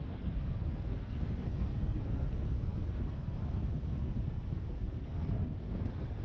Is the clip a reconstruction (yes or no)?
yes